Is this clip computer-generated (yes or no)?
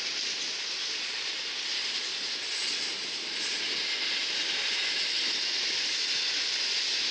no